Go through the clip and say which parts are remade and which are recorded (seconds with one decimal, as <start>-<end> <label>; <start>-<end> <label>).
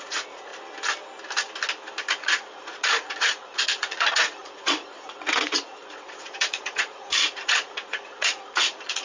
0.0-0.5 remade; 0.5-2.1 recorded; 2.1-9.0 remade